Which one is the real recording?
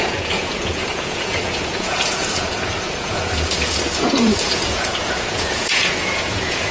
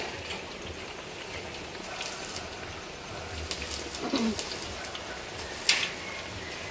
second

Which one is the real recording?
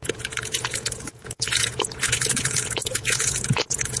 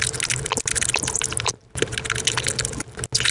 second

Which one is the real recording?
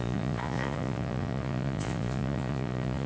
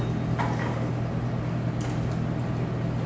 second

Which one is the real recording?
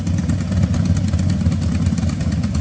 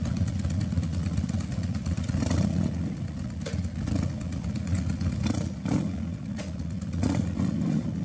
first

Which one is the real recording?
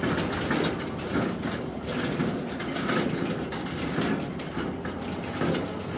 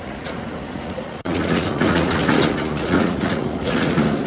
first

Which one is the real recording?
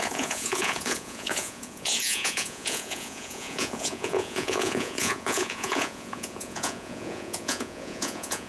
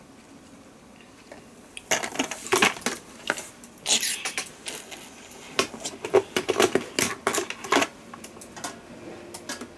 second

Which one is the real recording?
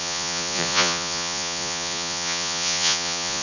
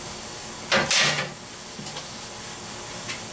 second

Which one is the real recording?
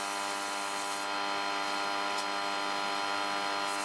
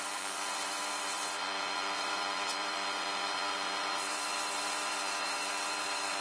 first